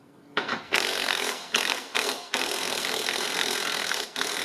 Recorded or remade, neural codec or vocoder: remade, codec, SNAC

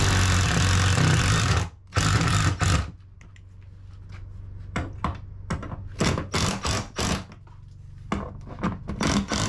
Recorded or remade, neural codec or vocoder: recorded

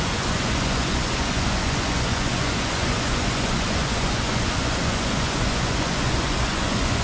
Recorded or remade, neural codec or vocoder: remade, vocoder, Vocos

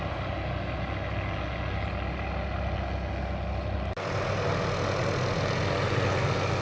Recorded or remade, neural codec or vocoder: recorded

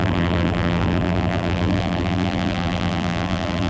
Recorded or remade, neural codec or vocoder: remade, vocoder, BigVGAN v2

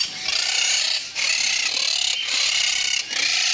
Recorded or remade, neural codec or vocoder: recorded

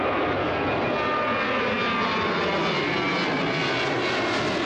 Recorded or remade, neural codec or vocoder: recorded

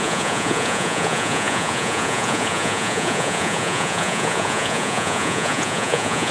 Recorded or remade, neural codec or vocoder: remade, vocoder, Vocos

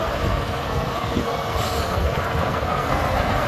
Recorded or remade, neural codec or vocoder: remade, codec, SNAC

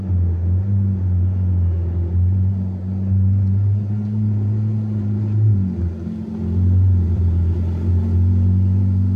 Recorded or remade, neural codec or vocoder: recorded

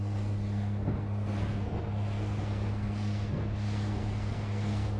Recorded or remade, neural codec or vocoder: remade, codec, SNAC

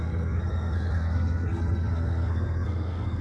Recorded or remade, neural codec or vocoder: remade, codec, SNAC